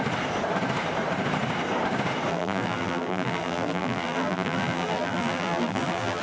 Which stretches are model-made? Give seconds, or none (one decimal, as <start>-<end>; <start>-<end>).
2.3-6.2